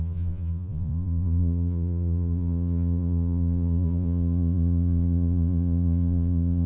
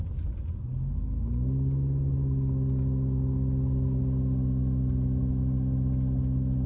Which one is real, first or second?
second